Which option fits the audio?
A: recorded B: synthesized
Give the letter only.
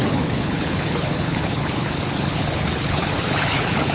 B